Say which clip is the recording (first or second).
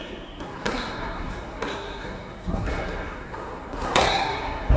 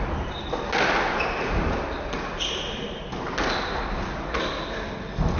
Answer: second